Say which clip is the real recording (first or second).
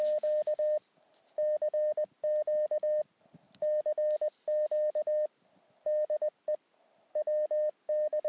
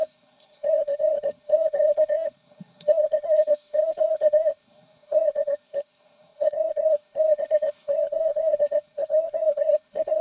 first